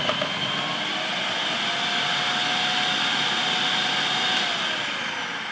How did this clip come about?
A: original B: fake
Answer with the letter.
A